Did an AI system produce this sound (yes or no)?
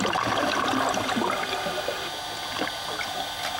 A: no